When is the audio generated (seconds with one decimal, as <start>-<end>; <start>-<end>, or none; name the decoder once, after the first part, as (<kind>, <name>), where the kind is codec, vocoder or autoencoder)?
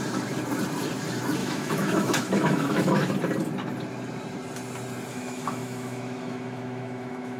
1.4-3.1 (autoencoder, DAC-VAE); 5.1-7.4